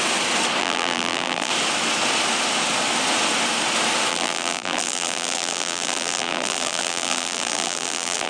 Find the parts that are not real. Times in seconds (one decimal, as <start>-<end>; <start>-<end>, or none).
0.6-1.5; 4.1-8.3